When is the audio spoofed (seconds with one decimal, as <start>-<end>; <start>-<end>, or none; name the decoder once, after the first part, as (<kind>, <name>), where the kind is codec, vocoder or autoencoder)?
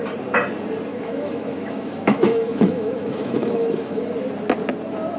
0.9-4.0 (autoencoder, DAC-VAE)